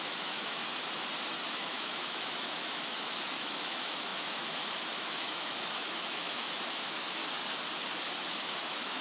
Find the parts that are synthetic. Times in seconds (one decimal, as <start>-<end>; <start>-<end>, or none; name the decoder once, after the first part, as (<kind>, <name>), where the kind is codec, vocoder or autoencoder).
0.0-0.6 (autoencoder, DAC-VAE); 1.5-7.2; 8.3-9.0